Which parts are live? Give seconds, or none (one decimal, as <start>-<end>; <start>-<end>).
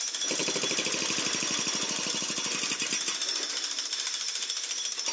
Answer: 0.0-5.1